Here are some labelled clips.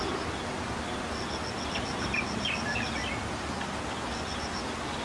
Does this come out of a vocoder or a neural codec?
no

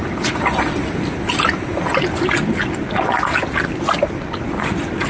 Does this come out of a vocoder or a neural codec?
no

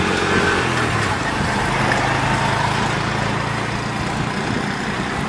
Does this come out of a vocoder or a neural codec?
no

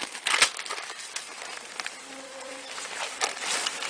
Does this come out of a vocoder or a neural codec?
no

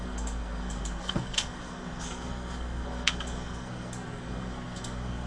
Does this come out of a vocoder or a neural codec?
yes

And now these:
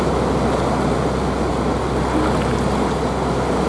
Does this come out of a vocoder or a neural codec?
no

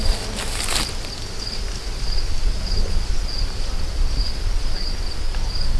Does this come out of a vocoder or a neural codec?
no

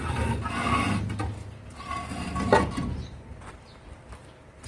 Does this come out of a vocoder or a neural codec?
no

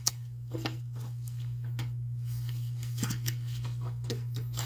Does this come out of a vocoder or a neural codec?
yes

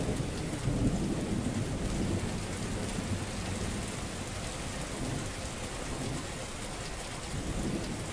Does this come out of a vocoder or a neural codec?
no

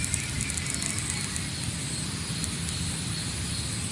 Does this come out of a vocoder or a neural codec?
no